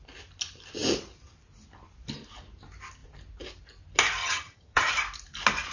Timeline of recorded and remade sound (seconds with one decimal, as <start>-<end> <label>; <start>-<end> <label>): 0.0-4.2 recorded; 4.2-4.9 remade; 4.9-5.7 recorded